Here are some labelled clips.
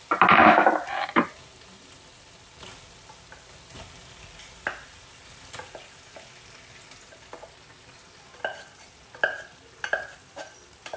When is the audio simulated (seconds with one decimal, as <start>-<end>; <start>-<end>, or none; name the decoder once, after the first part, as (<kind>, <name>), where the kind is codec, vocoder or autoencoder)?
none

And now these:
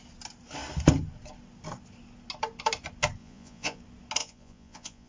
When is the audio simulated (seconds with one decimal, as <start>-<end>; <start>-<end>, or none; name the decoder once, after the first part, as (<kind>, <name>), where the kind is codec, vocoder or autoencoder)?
3.2-3.8 (vocoder, Vocos); 4.2-5.1

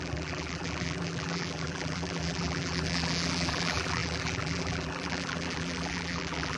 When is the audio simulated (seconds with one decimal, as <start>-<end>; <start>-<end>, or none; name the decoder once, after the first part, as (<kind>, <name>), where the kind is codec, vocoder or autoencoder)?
0.0-6.6 (vocoder, BigVGAN v2)

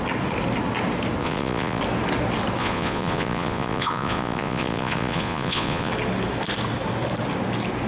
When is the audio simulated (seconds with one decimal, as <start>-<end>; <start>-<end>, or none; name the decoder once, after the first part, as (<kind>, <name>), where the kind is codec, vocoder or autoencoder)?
1.2-1.8 (vocoder, Vocos); 2.6-5.9

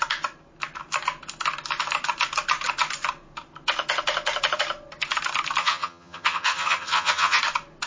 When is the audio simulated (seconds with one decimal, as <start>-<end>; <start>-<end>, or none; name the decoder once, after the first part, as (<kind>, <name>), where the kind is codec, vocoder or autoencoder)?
5.6-7.4 (vocoder, HiFi-GAN)

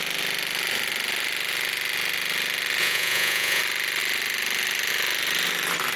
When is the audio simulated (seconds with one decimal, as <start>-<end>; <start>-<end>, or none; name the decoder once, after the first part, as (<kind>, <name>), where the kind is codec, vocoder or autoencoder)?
2.8-3.6 (vocoder, Vocos)